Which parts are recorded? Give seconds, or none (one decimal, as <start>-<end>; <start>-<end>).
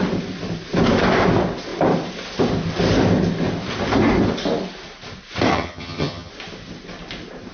0.0-5.5; 6.3-7.5